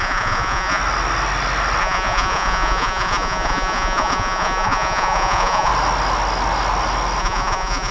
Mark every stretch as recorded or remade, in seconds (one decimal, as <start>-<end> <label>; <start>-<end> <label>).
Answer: 0.0-0.8 remade; 0.8-1.8 recorded; 1.8-5.7 remade; 5.7-7.2 recorded; 7.2-7.9 remade